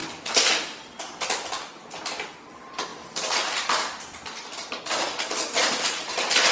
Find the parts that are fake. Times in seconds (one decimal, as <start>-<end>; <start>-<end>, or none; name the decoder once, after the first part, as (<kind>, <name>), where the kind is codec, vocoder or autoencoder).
none